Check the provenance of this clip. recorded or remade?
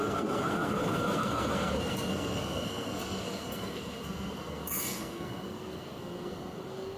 remade